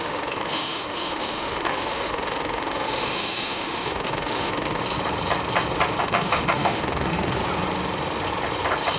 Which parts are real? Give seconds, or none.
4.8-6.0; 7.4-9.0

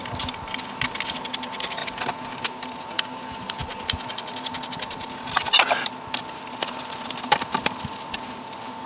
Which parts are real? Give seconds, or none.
0.0-8.9

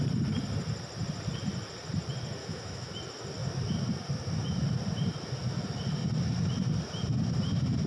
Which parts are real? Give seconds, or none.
0.0-2.4; 2.9-7.9

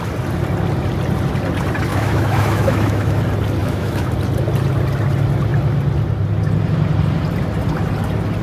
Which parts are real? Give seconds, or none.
0.0-1.9; 3.2-3.6; 4.1-8.4

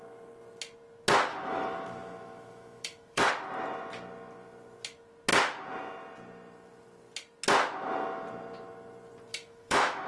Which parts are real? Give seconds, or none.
0.0-1.3; 3.3-9.3